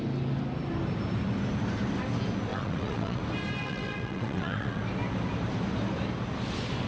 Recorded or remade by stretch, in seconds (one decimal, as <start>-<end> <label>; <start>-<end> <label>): 0.0-2.5 recorded; 2.5-3.2 remade; 3.2-3.6 recorded; 3.6-4.8 remade; 4.8-6.9 recorded